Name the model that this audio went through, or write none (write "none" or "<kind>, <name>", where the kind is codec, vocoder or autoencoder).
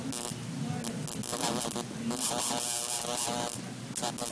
none